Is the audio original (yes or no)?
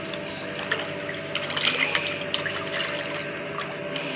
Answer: yes